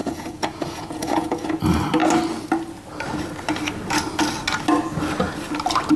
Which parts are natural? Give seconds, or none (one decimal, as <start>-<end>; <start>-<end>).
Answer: 1.6-6.0